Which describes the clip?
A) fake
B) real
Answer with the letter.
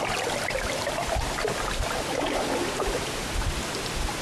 B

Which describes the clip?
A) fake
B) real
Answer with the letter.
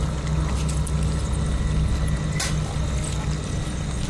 B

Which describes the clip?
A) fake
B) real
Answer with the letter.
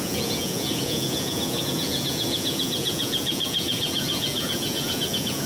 A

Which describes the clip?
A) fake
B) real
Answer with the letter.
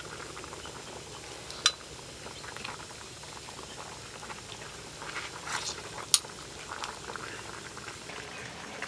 B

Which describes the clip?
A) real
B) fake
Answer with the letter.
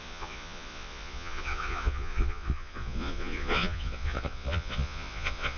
B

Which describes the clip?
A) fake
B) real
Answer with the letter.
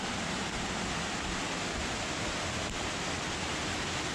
B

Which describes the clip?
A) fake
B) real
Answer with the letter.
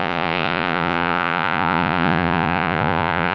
A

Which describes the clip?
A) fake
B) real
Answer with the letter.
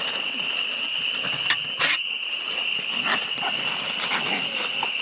B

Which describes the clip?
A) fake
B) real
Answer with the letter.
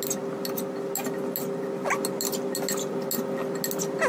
B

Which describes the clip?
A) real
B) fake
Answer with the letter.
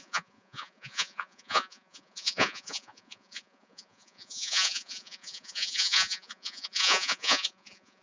B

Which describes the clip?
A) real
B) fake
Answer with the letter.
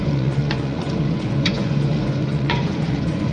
B